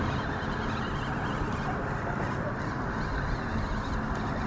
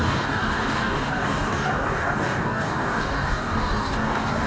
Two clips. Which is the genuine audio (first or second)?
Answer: first